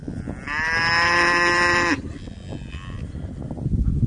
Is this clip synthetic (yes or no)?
no